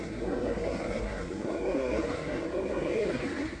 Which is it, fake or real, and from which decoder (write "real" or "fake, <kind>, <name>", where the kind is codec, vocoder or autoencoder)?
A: fake, codec, SNAC